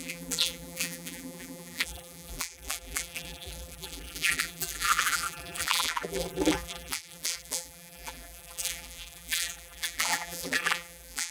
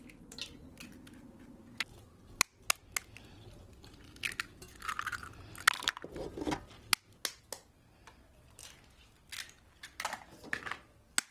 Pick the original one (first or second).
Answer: second